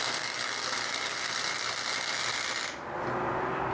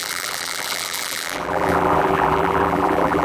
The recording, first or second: first